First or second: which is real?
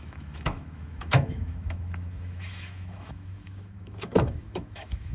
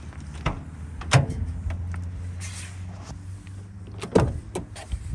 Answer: second